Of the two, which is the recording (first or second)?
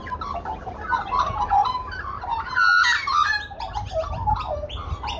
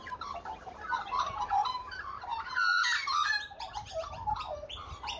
first